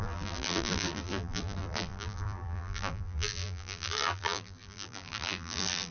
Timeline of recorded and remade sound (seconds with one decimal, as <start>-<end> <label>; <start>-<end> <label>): 0.0-5.9 remade